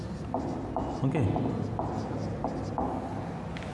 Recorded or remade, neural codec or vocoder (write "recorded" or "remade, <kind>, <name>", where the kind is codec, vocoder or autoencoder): recorded